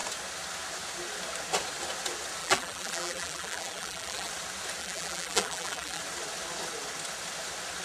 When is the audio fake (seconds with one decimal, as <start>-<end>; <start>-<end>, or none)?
2.4-4.3; 4.8-6.0